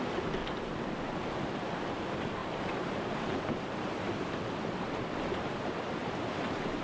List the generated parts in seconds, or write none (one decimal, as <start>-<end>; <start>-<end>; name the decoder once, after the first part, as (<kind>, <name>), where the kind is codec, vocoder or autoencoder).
0.4-1.6 (vocoder, BigVGAN v2); 2.4-5.5; 6.0-6.8